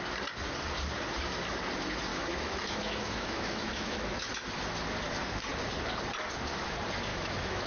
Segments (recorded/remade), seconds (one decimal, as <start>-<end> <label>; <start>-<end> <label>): 0.0-2.1 recorded; 2.1-4.3 remade; 4.3-7.1 recorded; 7.1-7.7 remade